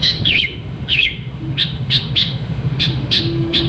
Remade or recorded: remade